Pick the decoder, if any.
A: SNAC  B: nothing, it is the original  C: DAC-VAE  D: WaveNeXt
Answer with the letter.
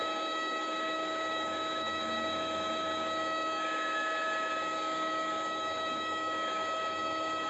C